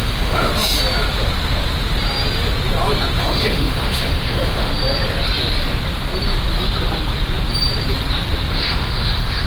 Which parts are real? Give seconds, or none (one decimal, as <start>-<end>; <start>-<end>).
0.5-3.2; 4.7-8.5